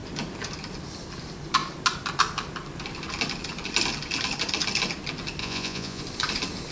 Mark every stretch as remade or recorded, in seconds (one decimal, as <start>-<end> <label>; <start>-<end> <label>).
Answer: 0.0-5.4 recorded; 5.4-6.0 remade; 6.0-6.7 recorded